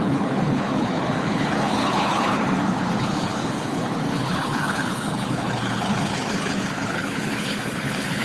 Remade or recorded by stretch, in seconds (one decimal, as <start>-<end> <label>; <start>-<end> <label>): 0.0-8.2 remade